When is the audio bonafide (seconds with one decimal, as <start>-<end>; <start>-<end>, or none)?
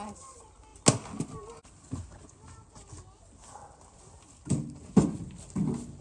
0.0-6.0